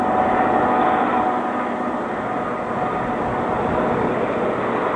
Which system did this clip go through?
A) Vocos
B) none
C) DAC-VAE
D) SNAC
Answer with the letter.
B